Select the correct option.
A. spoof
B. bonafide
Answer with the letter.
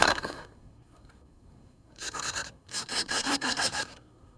A